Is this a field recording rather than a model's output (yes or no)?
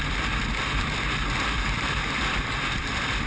yes